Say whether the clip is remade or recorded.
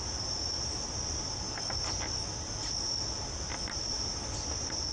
recorded